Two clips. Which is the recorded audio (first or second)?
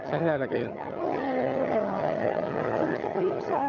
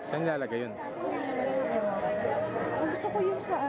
second